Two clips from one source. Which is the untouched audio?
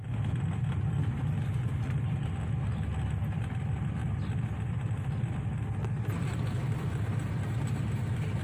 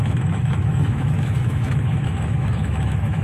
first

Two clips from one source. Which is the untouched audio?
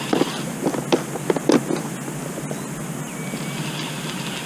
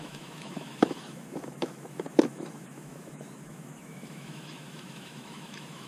first